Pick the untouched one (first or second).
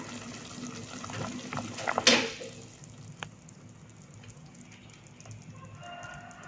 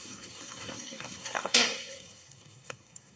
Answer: first